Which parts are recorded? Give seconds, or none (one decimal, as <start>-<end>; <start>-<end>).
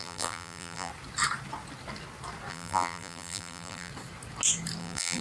0.9-2.5; 3.9-4.8